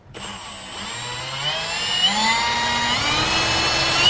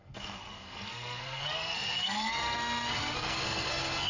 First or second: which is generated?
second